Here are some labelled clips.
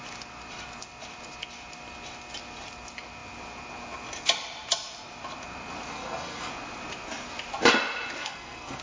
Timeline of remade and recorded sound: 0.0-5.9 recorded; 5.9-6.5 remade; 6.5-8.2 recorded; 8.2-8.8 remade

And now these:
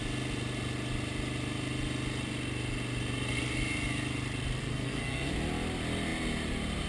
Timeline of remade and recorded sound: 0.0-4.6 recorded; 4.6-5.3 remade; 5.3-6.9 recorded

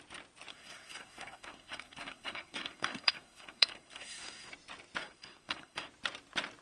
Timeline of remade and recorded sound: 0.0-0.5 recorded; 0.5-4.5 remade; 4.5-5.0 recorded; 5.0-5.9 remade; 5.9-6.6 recorded